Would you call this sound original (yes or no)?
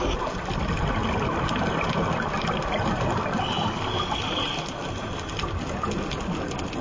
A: yes